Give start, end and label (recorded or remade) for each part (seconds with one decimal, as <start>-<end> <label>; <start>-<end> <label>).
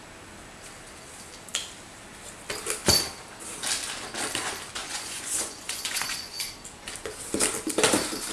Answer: 0.0-4.8 recorded; 4.8-6.4 remade; 6.4-8.3 recorded